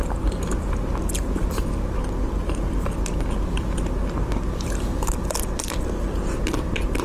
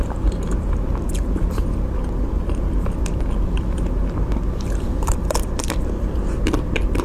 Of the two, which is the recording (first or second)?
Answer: first